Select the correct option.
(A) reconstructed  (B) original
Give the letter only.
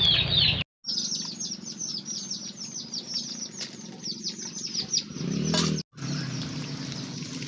B